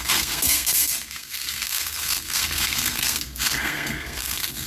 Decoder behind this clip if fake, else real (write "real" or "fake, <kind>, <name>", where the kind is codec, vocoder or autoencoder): fake, codec, SNAC